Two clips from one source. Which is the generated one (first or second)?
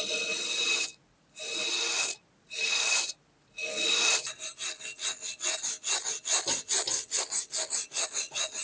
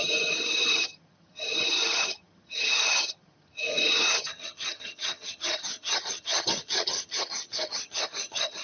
second